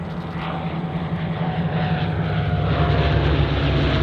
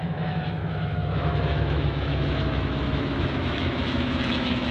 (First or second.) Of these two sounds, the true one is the first